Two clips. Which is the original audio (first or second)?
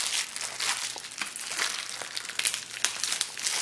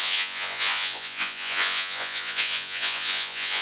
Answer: first